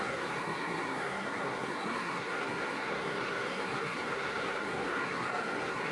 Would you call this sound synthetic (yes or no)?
yes